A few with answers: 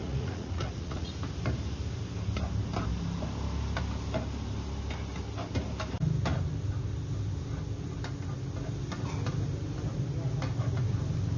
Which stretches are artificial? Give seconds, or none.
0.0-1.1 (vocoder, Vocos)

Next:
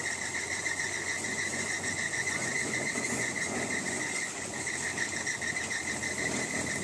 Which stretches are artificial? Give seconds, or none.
0.5-4.6 (vocoder, Vocos)

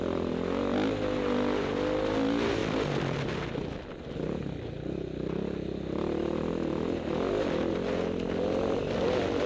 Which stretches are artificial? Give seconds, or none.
none

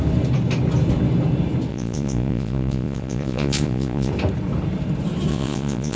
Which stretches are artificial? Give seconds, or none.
1.7-4.1 (vocoder, Vocos); 5.3-6.0

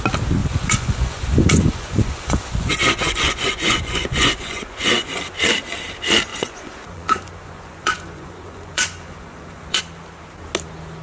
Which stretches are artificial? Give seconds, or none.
0.4-5.2 (vocoder, Vocos); 6.3-9.8